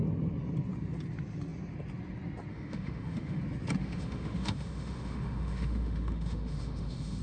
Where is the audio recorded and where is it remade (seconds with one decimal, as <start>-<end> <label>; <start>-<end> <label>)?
0.0-2.5 recorded; 2.5-3.4 remade; 3.4-3.8 recorded; 3.8-7.2 remade